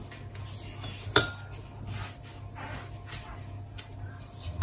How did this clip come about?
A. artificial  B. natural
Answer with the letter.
B